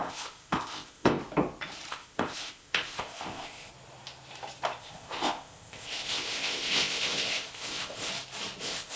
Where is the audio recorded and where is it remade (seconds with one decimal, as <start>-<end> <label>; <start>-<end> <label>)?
0.0-1.2 remade; 1.2-1.9 recorded; 1.9-3.7 remade; 3.7-4.8 recorded; 4.8-8.1 remade; 8.1-8.6 recorded; 8.6-9.0 remade